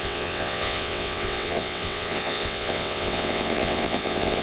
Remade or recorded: remade